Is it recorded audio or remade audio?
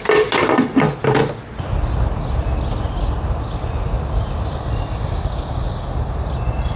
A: recorded